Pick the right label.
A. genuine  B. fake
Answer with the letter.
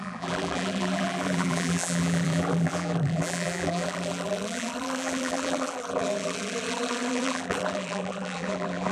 B